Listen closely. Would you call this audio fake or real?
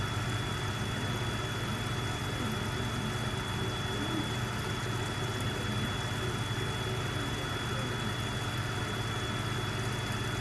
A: real